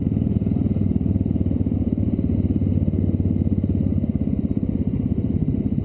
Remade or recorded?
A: recorded